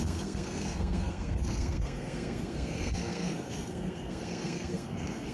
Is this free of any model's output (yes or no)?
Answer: no